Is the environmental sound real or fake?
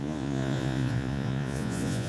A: fake